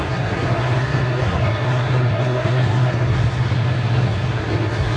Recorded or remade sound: remade